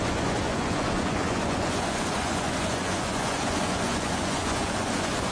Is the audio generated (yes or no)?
yes